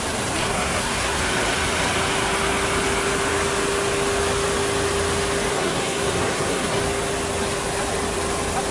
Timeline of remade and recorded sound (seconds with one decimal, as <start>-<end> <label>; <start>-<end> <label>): 0.0-0.4 recorded; 0.4-1.2 remade; 1.2-5.5 recorded; 5.5-6.8 remade; 6.8-8.7 recorded